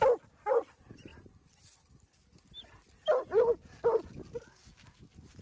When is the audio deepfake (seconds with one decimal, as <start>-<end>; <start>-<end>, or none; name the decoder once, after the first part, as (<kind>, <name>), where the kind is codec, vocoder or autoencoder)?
none